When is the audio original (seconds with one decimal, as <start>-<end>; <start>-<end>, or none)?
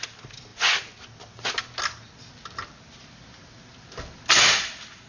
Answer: 0.0-5.1